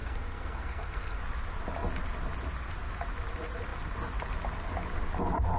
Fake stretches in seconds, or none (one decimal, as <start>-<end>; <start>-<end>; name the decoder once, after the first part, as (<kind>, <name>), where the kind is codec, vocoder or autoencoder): 0.0-1.2 (codec, SNAC)